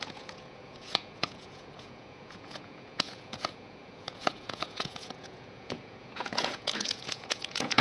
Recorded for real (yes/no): no